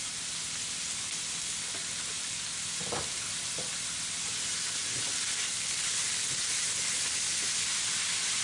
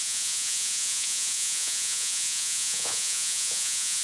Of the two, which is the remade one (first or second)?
second